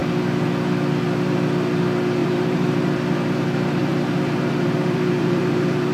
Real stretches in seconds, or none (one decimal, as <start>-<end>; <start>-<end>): 0.0-2.2